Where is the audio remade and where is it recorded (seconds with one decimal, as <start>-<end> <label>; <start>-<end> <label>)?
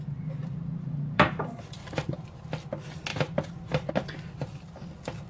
0.0-0.4 recorded; 0.4-2.2 remade; 2.2-3.1 recorded; 3.1-3.9 remade; 3.9-5.3 recorded